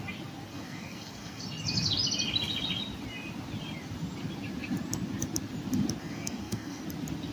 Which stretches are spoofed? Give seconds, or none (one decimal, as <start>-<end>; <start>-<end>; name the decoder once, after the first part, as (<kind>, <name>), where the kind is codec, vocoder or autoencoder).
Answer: 0.5-1.4 (codec, SNAC); 6.0-6.8